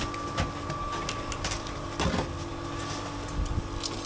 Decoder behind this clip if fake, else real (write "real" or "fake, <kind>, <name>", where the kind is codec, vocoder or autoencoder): real